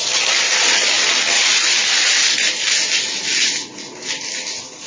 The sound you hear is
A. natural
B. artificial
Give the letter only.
A